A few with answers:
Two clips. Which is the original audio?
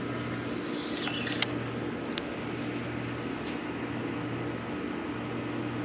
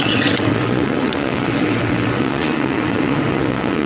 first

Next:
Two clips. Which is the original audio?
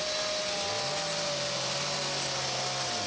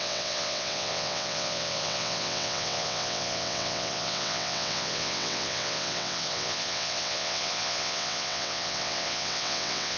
first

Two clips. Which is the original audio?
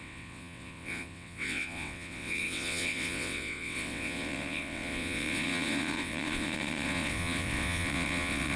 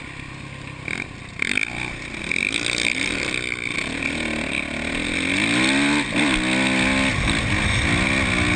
second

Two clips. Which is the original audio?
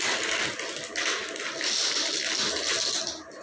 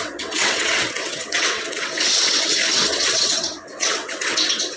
first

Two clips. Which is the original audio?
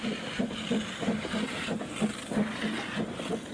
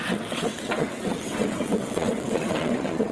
first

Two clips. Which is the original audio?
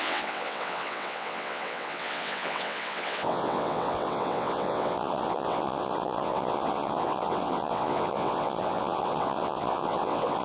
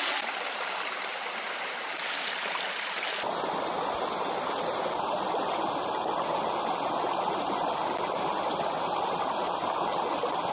second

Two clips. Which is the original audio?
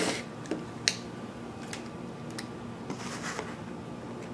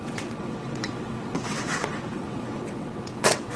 first